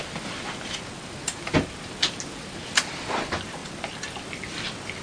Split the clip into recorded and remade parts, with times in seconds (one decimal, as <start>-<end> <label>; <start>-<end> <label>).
0.0-5.0 recorded